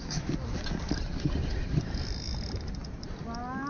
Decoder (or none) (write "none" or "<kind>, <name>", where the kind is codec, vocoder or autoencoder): none